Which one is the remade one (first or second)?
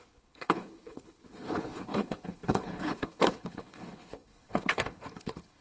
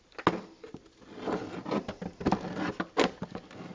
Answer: first